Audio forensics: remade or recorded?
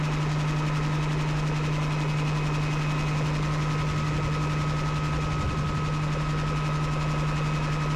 recorded